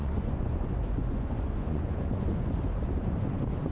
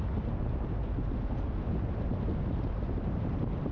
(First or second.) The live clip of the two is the second